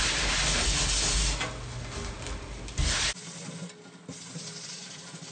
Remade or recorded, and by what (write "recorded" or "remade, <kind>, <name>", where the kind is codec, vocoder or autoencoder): recorded